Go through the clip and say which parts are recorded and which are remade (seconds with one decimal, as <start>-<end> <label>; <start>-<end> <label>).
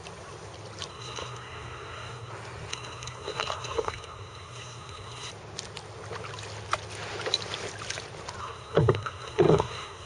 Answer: 0.0-0.9 recorded; 0.9-2.3 remade; 2.3-2.7 recorded; 2.7-5.3 remade; 5.3-8.4 recorded; 8.4-10.1 remade